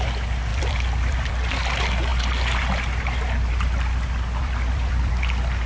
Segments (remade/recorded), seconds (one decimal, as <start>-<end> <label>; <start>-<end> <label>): 0.0-0.5 recorded; 0.5-1.3 remade; 1.3-4.4 recorded; 4.4-5.1 remade; 5.1-5.7 recorded